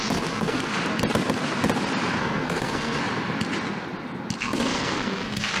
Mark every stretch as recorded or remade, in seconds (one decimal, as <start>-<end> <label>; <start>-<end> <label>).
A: 0.0-0.7 remade; 0.7-2.2 recorded; 2.2-3.0 remade; 3.0-4.4 recorded; 4.4-5.6 remade